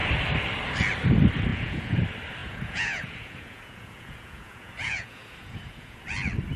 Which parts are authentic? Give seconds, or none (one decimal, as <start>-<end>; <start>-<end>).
0.0-1.5; 2.0-2.4; 6.0-6.6